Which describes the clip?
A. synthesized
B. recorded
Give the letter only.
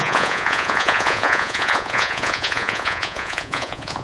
A